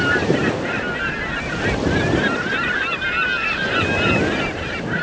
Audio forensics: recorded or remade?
recorded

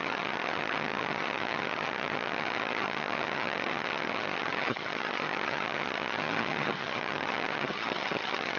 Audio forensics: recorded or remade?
remade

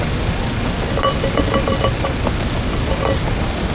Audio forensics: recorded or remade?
recorded